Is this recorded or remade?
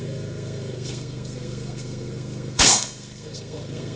remade